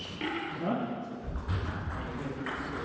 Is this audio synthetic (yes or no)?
no